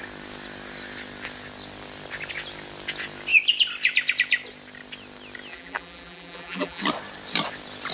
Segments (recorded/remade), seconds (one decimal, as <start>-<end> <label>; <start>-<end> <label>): 0.0-5.5 recorded; 5.5-6.8 remade; 6.8-7.9 recorded